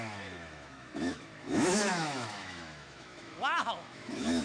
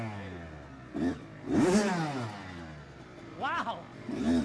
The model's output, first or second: first